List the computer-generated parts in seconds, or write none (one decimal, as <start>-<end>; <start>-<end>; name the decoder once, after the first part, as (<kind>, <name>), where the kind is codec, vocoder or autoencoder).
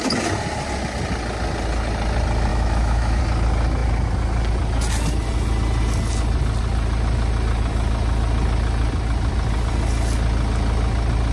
2.5-3.2 (autoencoder, DAC-VAE)